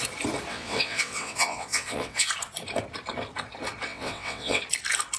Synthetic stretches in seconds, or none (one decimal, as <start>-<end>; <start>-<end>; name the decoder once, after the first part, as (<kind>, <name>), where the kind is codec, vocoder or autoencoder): 0.5-2.3 (vocoder, WaveNeXt); 3.9-4.6